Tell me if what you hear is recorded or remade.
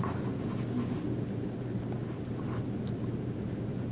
recorded